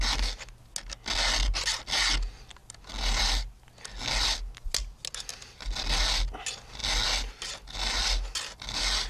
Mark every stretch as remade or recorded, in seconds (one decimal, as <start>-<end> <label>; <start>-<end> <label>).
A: 0.0-9.1 recorded